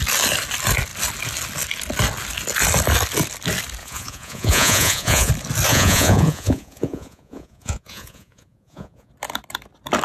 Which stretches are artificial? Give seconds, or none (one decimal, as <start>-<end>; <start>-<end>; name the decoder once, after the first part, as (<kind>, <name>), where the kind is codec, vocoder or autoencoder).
3.8-5.3 (vocoder, Vocos); 5.7-9.1